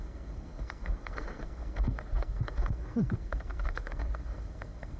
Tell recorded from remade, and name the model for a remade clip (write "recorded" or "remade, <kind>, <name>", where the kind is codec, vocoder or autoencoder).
remade, codec, SNAC